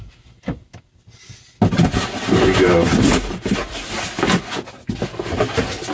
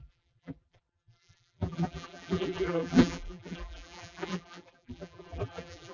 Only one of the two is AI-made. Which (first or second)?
second